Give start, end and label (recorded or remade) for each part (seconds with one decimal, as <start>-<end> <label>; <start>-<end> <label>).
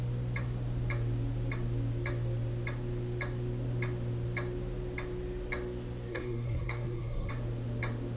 0.0-6.1 recorded; 6.1-7.3 remade; 7.3-8.2 recorded